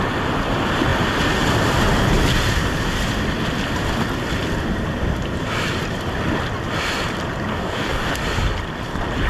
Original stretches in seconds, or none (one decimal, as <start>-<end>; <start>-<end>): 0.0-7.5; 8.1-9.3